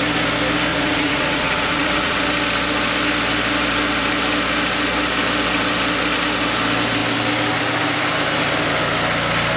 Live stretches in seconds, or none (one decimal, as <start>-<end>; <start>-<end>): 0.0-0.7; 2.2-9.6